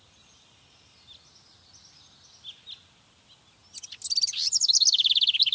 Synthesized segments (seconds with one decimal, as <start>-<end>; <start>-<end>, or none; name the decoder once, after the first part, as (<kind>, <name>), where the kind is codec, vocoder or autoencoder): none